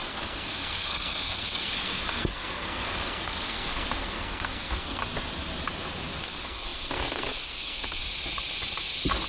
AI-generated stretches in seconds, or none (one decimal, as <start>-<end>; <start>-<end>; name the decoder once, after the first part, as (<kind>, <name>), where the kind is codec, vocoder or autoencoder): 0.0-5.0 (codec, SNAC); 6.2-8.0